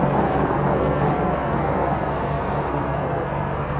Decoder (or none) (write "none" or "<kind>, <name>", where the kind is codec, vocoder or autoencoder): codec, SNAC